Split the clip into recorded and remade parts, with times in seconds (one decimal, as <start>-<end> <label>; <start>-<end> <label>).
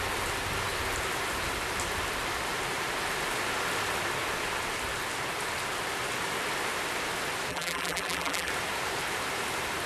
0.0-7.5 recorded; 7.5-8.5 remade; 8.5-9.9 recorded